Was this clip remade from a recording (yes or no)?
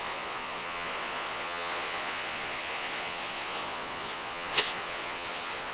yes